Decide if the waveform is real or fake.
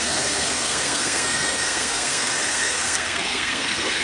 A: fake